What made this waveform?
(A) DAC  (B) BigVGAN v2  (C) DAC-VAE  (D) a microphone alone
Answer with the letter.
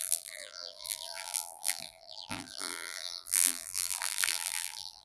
B